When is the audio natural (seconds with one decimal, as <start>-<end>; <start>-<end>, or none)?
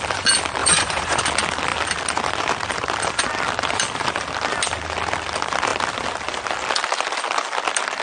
0.0-0.6; 1.2-8.0